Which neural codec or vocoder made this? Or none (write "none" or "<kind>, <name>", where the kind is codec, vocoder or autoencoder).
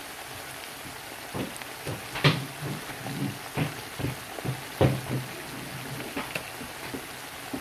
none